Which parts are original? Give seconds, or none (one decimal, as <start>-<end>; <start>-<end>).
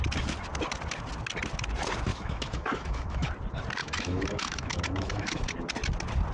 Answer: 0.0-2.1; 3.3-3.8; 5.4-6.3